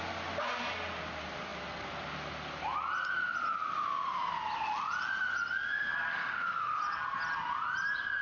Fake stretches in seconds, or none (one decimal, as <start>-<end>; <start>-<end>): 6.1-6.8